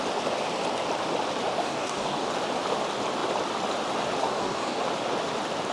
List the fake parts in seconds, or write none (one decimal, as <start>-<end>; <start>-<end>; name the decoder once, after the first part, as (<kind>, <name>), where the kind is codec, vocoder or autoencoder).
1.6-2.3 (codec, DAC); 4.2-4.8